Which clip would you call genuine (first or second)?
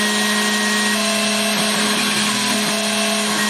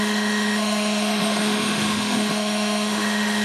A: first